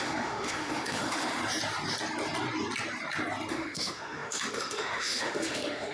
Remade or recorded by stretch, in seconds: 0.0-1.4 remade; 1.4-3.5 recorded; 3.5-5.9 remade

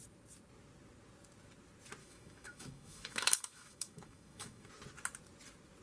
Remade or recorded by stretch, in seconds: 0.0-2.0 recorded; 2.0-4.7 remade; 4.7-5.8 recorded

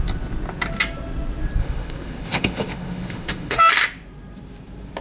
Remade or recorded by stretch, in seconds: 0.0-1.6 recorded; 1.6-3.7 remade; 3.7-5.0 recorded

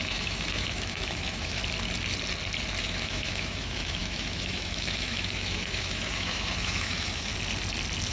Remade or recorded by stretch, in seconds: 0.0-1.6 remade; 1.6-2.8 recorded; 2.8-7.3 remade; 7.3-8.1 recorded

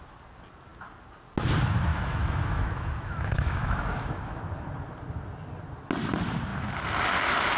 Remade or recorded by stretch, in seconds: 0.0-1.9 recorded; 1.9-4.4 remade; 4.4-7.6 recorded